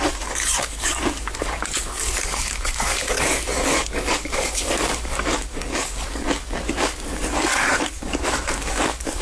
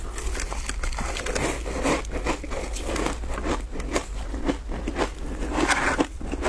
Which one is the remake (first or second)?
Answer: first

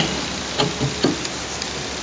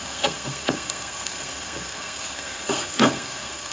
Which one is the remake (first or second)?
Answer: second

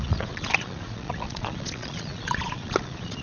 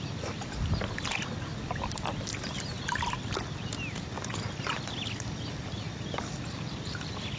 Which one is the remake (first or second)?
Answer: first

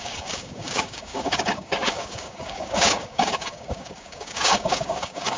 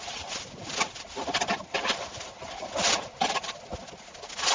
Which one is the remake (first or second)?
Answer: first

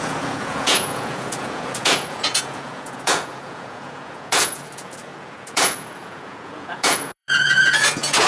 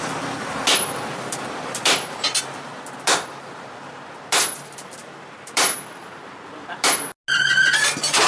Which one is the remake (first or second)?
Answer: first